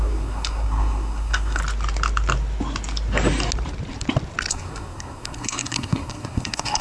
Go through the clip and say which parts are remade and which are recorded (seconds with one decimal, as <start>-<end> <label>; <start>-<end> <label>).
0.0-1.6 remade; 1.6-4.5 recorded; 4.5-6.8 remade